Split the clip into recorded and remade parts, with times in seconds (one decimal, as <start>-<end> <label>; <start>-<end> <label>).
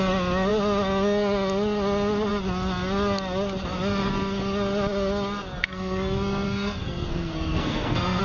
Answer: 0.0-5.6 recorded; 5.6-8.2 remade